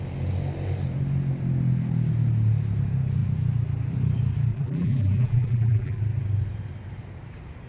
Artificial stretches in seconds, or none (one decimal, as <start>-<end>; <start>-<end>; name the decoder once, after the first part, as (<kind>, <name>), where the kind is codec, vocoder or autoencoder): 4.5-6.0 (vocoder, BigVGAN v2)